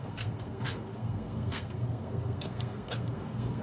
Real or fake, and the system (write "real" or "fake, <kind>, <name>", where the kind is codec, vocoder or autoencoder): fake, codec, SNAC